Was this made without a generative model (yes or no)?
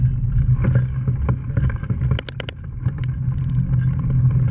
yes